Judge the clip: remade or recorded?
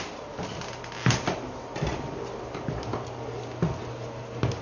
recorded